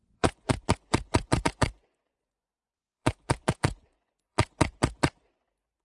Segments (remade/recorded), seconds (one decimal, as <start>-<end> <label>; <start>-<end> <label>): 0.0-5.8 remade